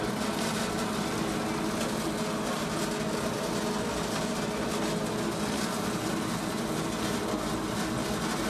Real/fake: real